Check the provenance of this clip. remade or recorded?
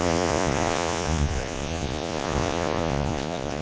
remade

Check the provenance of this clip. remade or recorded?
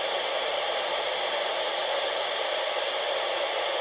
recorded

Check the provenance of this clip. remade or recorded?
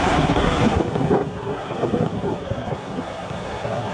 remade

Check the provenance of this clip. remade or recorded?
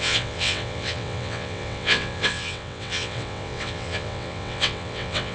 remade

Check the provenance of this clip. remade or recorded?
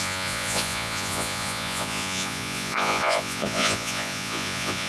remade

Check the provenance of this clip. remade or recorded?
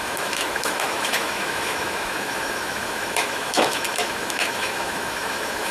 remade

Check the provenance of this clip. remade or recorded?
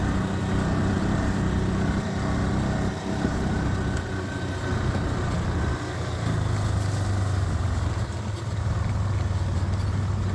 recorded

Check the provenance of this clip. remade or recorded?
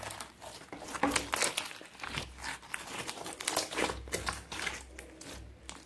recorded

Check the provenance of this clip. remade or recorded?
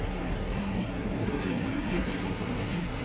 remade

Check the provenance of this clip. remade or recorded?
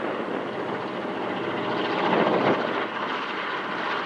recorded